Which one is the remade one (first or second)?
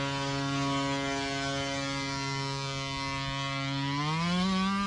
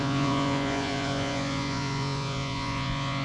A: second